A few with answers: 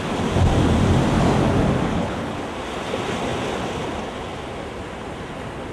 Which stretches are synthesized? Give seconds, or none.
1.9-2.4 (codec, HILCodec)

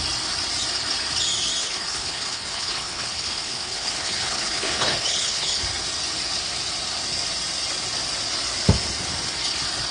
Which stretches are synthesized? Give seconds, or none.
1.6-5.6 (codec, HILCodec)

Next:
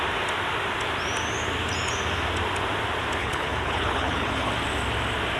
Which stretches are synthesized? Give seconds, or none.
3.2-4.5 (codec, HILCodec)

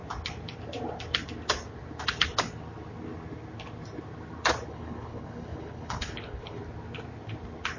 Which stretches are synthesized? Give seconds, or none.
4.7-6.6 (codec, HILCodec)